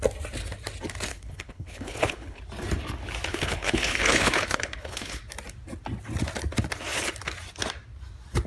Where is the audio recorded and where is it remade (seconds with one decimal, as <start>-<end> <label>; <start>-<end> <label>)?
0.0-1.1 recorded; 1.1-2.4 remade; 2.4-3.3 recorded; 3.3-5.2 remade; 5.2-8.5 recorded